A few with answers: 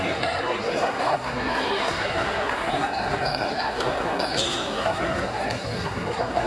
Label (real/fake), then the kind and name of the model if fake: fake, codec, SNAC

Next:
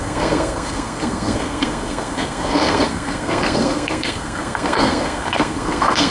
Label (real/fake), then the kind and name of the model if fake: fake, codec, SNAC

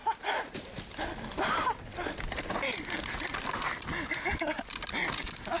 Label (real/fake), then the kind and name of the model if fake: real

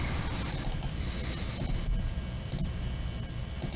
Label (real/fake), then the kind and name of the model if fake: real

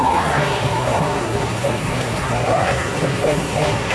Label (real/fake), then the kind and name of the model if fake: fake, codec, SNAC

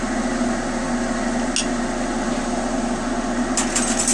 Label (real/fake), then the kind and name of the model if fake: real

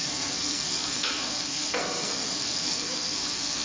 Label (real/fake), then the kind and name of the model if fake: fake, codec, SNAC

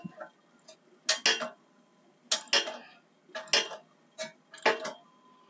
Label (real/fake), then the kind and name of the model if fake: real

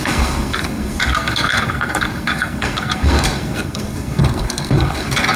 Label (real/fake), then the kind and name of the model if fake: fake, codec, SNAC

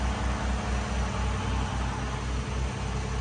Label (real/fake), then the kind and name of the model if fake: real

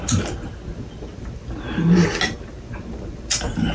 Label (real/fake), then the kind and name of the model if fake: real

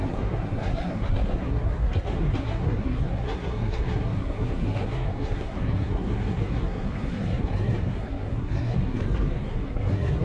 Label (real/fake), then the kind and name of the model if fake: fake, codec, SNAC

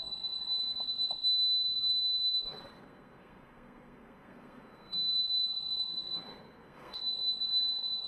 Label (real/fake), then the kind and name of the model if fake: fake, codec, SNAC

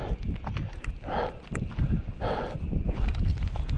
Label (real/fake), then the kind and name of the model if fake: real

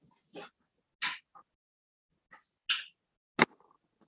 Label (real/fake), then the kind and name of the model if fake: real